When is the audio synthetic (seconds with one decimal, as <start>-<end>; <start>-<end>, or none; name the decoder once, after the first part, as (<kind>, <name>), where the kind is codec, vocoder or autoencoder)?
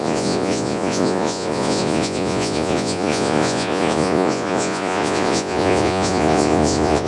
0.0-7.1 (vocoder, Vocos)